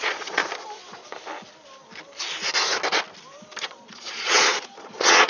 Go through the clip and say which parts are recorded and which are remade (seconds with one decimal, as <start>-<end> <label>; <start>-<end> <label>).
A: 0.0-0.4 remade; 0.4-3.6 recorded; 3.6-5.3 remade

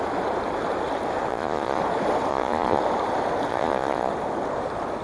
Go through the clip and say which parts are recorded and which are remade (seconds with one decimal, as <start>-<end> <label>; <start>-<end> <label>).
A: 0.0-1.3 recorded; 1.3-1.8 remade; 1.8-2.3 recorded; 2.3-2.8 remade; 2.8-3.5 recorded; 3.5-4.1 remade; 4.1-5.0 recorded

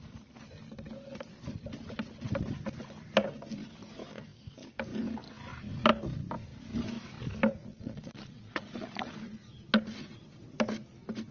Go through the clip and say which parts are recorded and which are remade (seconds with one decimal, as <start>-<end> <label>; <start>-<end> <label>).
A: 0.0-7.6 recorded; 7.6-9.1 remade; 9.1-11.3 recorded

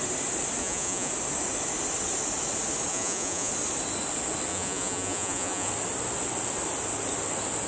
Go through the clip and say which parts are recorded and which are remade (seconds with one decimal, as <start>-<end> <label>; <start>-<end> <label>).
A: 0.0-0.6 recorded; 0.6-1.1 remade; 1.1-2.9 recorded; 2.9-3.5 remade; 3.5-4.5 recorded; 4.5-5.7 remade; 5.7-7.7 recorded